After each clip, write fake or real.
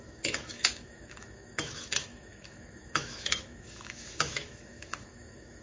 fake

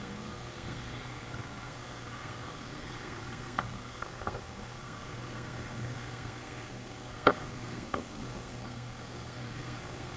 fake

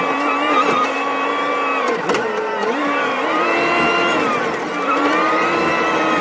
real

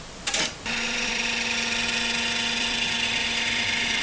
fake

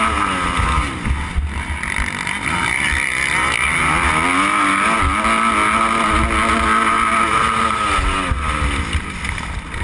real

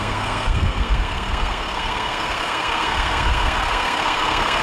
fake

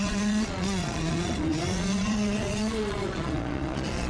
fake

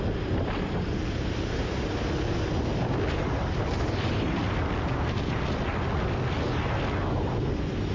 real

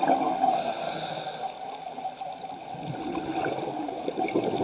real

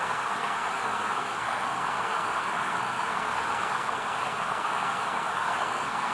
fake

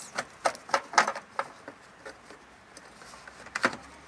real